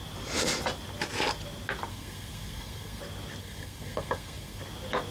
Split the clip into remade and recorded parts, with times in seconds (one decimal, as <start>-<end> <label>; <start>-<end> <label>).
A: 0.0-1.9 recorded; 1.9-3.0 remade; 3.0-3.4 recorded; 3.4-4.6 remade; 4.6-5.1 recorded